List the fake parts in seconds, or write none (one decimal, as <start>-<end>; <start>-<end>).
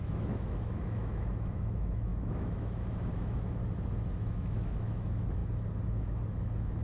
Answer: 0.0-3.6; 4.2-5.4; 6.0-6.8